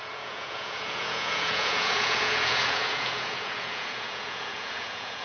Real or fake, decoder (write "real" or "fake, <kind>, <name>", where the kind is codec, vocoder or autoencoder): fake, vocoder, Vocos